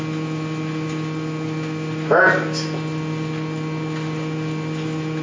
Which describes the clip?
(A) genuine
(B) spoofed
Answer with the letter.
A